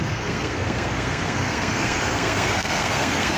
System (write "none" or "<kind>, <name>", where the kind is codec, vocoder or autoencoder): codec, SNAC